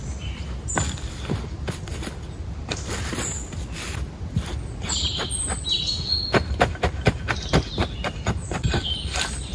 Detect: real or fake real